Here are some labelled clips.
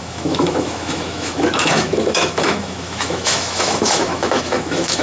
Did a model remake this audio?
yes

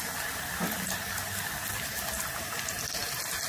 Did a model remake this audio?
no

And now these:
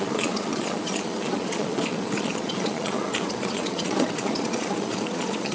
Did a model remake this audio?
yes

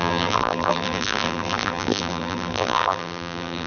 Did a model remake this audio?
yes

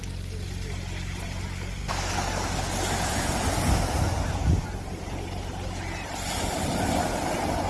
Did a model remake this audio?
no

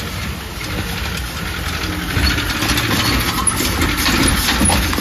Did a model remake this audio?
no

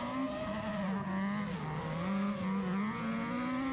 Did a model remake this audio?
no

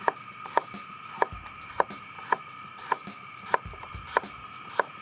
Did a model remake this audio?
no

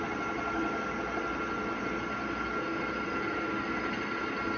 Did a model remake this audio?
no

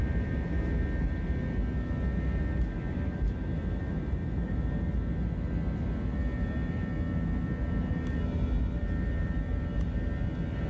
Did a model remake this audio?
no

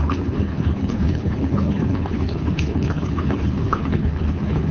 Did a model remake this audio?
yes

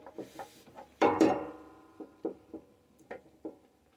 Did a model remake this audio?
yes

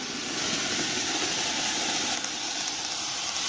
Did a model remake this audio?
no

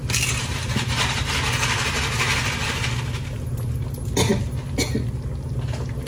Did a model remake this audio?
no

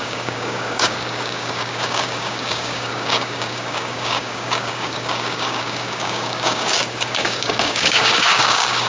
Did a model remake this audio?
yes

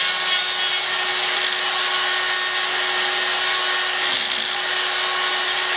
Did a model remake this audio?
no